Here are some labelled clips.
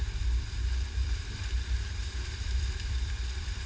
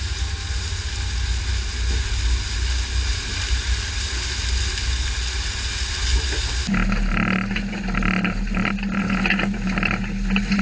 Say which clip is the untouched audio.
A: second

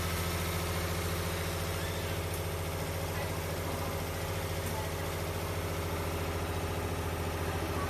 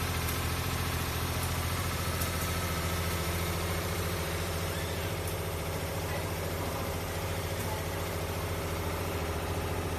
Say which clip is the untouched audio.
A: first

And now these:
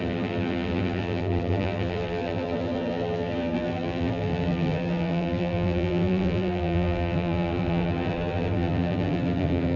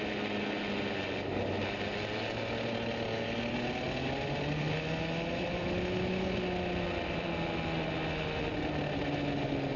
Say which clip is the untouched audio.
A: second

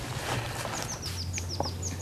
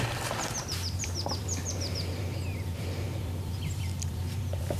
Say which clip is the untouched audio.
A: first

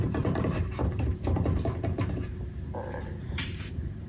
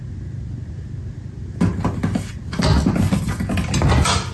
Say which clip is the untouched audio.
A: second